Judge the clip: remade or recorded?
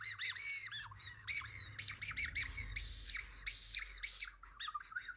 recorded